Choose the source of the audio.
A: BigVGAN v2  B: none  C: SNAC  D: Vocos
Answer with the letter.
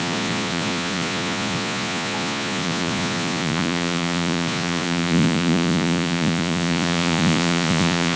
D